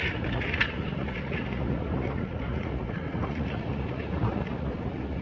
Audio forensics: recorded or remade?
remade